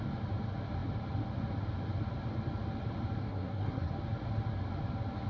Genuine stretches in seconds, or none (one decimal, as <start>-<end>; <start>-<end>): 0.0-3.2; 3.9-5.3